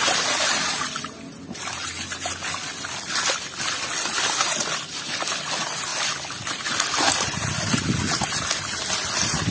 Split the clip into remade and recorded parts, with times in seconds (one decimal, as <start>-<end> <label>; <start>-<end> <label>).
0.0-9.5 recorded